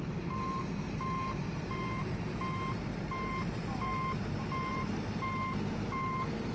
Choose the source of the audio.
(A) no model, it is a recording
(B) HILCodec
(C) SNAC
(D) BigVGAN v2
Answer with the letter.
D